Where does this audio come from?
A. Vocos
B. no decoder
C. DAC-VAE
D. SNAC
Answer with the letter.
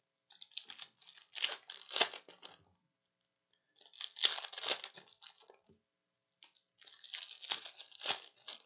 B